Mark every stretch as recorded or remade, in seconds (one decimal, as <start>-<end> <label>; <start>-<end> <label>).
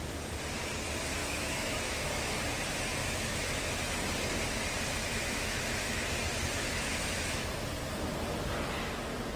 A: 0.0-1.2 recorded; 1.2-2.4 remade; 2.4-3.0 recorded; 3.0-3.7 remade; 3.7-5.1 recorded; 5.1-6.1 remade; 6.1-6.6 recorded; 6.6-7.7 remade; 7.7-9.4 recorded